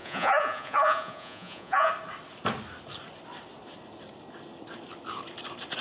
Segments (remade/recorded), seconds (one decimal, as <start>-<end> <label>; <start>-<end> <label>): 0.0-1.9 remade; 1.9-5.8 recorded